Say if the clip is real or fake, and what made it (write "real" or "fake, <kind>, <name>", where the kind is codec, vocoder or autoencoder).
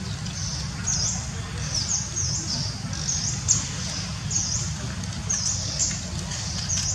real